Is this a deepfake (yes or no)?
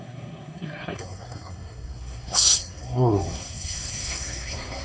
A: yes